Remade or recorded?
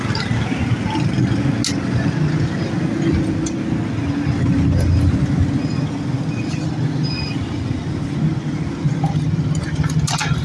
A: recorded